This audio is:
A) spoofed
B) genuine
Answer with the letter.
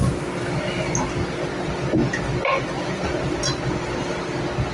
B